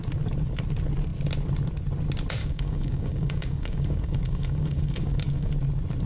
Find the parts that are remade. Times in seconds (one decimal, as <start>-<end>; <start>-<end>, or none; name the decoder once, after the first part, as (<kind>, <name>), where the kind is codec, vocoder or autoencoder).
2.4-5.5 (codec, DAC)